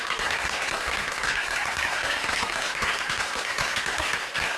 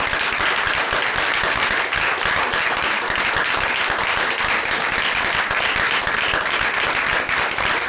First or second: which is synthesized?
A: first